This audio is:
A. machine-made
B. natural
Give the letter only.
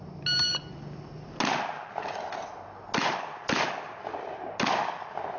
B